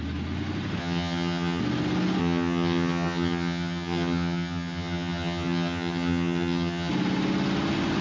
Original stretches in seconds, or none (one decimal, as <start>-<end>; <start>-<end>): 0.0-0.8; 1.6-2.2; 6.9-8.0